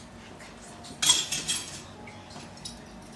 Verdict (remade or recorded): recorded